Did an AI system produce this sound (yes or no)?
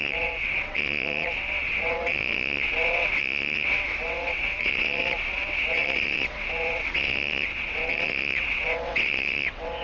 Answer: yes